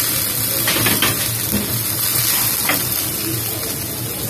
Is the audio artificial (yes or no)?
no